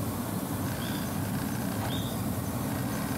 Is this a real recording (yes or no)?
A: yes